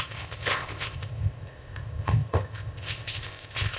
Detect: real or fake fake